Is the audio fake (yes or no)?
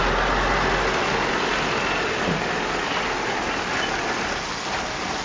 no